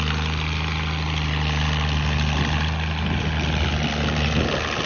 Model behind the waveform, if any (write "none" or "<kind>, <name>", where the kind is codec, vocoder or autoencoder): none